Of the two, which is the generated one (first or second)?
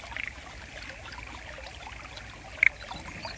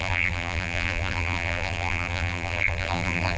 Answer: second